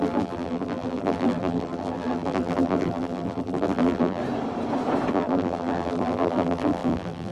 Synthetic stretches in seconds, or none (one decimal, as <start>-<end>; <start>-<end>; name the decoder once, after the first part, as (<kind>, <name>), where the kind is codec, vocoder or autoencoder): 0.0-4.2 (vocoder, BigVGAN v2); 5.1-7.3